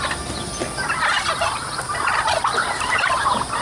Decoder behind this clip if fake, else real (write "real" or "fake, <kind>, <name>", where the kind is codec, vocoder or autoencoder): real